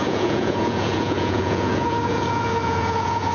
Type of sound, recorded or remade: remade